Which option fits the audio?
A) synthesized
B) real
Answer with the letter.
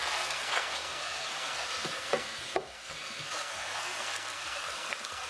A